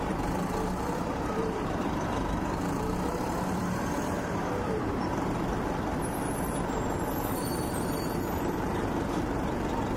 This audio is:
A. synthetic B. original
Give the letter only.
A